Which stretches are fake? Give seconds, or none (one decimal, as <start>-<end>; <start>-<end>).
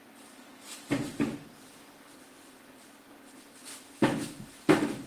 0.0-1.1; 4.2-5.1